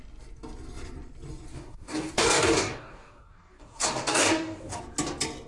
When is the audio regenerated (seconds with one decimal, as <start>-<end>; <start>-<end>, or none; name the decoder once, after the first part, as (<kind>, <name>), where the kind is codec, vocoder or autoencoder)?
1.5-4.8 (codec, DAC)